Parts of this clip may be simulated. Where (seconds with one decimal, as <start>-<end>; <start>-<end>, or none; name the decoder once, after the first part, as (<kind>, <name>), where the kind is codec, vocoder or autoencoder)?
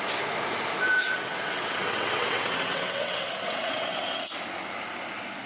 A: 1.0-4.3 (vocoder, WaveNeXt)